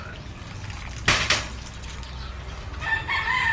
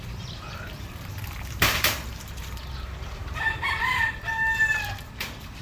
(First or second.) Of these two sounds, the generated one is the second